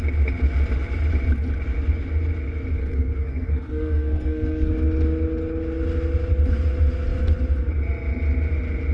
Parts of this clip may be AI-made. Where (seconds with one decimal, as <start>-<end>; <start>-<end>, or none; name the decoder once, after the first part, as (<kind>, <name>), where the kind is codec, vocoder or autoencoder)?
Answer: 2.8-4.7 (codec, SNAC)